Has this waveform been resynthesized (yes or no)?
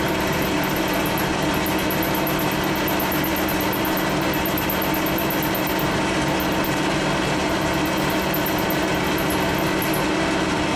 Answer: no